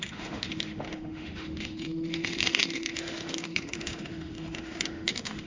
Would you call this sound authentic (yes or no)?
no